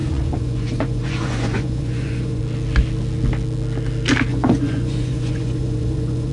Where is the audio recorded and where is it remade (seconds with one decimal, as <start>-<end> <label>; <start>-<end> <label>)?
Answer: 0.0-2.4 remade; 2.4-4.3 recorded; 4.3-6.3 remade